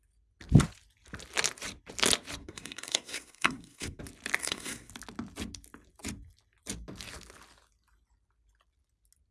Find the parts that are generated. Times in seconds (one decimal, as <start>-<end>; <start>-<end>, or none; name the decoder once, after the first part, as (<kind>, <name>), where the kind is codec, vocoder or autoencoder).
2.4-4.0 (codec, SNAC); 4.4-4.9